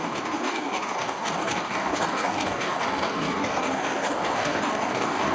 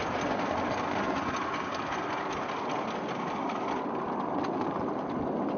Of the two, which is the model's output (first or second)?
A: first